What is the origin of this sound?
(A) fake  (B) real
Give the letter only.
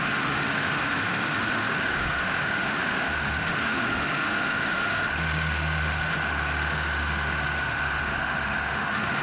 A